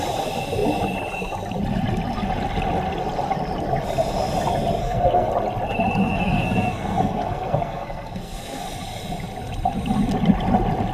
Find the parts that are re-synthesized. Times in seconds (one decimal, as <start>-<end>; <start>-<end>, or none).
4.8-5.3; 6.0-8.6